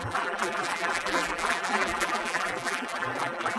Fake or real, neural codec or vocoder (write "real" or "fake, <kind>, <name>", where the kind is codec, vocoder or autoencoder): fake, vocoder, BigVGAN v2